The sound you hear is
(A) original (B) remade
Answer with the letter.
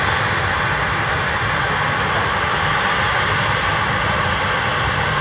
A